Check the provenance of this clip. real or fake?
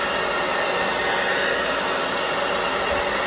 real